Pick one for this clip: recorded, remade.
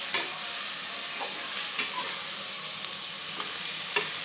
recorded